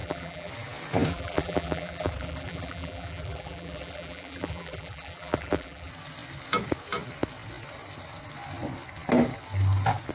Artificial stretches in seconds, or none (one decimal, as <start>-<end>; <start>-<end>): 0.0-0.5; 1.1-5.9